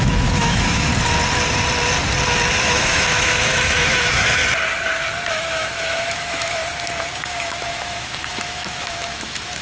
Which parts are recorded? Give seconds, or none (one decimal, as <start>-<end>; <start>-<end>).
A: 0.9-2.6; 4.4-5.3; 6.6-7.2